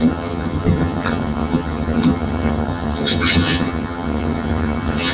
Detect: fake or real fake